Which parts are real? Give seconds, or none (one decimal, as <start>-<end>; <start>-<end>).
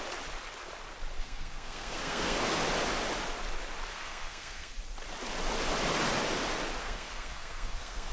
0.0-1.2; 2.4-3.9; 4.7-6.8